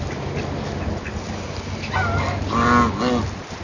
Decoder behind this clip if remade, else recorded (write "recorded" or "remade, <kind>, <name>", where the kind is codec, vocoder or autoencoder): recorded